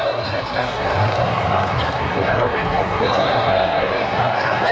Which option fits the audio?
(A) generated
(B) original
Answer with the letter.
A